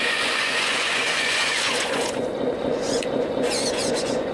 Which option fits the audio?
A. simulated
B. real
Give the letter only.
A